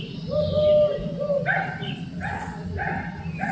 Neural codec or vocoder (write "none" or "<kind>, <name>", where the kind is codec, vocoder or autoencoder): none